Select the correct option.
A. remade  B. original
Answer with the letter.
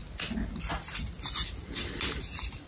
B